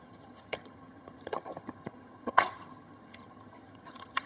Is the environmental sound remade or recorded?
remade